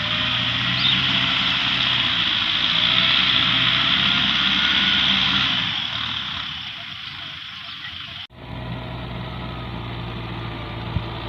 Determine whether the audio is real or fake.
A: real